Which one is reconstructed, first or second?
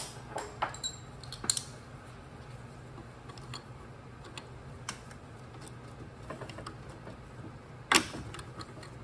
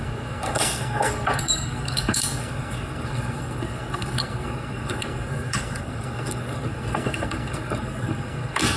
second